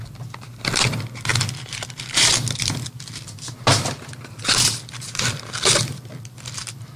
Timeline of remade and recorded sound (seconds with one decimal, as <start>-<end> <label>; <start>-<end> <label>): 0.0-7.0 recorded